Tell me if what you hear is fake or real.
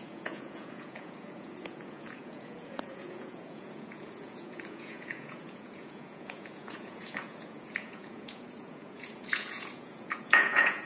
fake